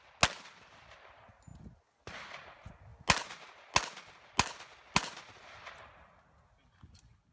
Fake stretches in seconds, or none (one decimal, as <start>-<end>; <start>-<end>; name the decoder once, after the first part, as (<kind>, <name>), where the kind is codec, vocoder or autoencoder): none